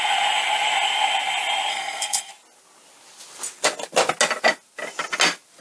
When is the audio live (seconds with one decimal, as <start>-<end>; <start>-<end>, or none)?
0.0-1.7; 2.3-5.6